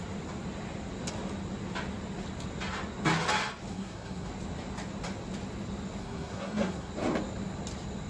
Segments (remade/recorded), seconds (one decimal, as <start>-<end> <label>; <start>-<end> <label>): 0.0-3.7 recorded; 3.7-4.3 remade; 4.3-6.0 recorded; 6.0-6.9 remade; 6.9-8.1 recorded